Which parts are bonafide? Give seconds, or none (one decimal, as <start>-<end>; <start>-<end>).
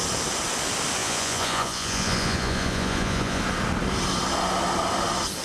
0.0-1.0; 3.4-5.4